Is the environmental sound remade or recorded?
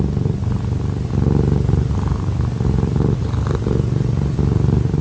recorded